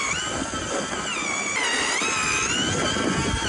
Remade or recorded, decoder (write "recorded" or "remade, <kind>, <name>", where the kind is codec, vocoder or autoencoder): recorded